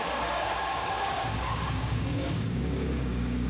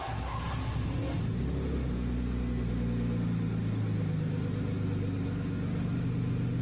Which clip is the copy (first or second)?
first